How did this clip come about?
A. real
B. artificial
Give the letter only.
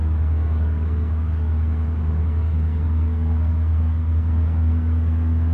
B